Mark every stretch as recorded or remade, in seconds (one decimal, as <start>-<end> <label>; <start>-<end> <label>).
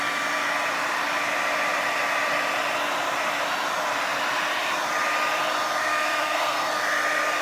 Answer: 0.0-5.8 recorded; 5.8-6.7 remade; 6.7-7.4 recorded